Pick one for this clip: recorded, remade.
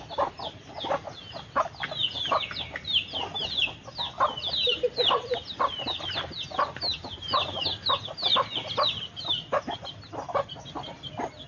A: recorded